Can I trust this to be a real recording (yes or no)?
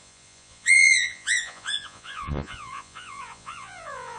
no